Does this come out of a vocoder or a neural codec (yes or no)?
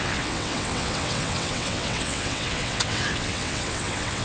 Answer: yes